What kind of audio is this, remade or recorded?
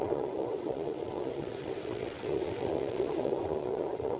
remade